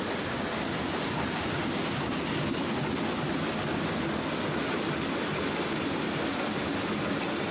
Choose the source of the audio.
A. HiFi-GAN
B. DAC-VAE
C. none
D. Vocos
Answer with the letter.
C